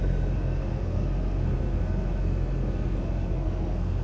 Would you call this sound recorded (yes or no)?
no